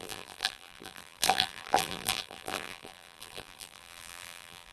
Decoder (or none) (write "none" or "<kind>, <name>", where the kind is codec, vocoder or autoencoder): vocoder, BigVGAN v2